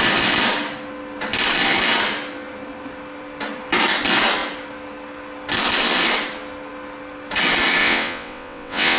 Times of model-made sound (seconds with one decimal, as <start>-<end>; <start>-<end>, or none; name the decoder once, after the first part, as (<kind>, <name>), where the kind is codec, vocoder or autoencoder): 7.8-9.0 (vocoder, WaveNeXt)